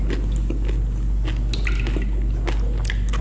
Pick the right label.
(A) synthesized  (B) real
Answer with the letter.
B